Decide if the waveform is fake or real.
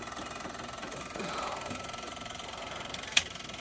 fake